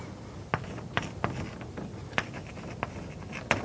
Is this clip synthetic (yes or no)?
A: no